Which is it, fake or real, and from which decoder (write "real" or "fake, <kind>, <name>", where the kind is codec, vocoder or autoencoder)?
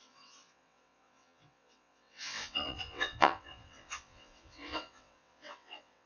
fake, vocoder, WaveNeXt